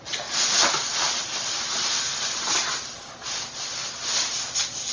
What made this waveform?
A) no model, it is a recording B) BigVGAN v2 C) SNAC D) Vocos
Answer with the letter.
A